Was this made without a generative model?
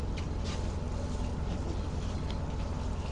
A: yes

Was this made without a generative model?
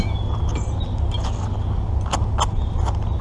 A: yes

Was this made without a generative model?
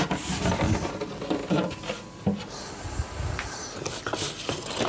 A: yes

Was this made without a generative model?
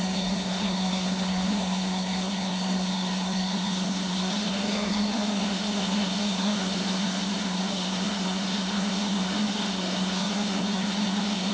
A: no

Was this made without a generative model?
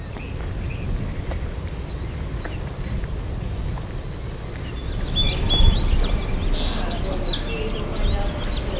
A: yes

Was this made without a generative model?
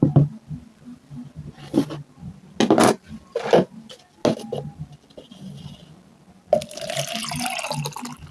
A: yes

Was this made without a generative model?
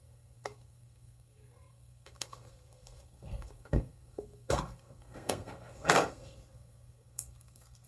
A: no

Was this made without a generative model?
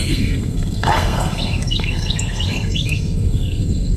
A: no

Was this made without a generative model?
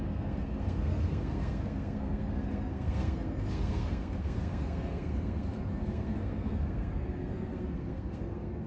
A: no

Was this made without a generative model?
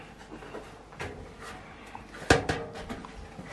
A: yes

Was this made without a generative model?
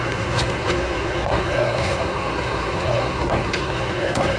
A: no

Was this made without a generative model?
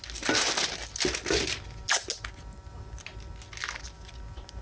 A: yes